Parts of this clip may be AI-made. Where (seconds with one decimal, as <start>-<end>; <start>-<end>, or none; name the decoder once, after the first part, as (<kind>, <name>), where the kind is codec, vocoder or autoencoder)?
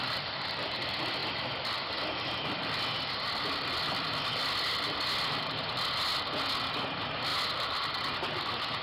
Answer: none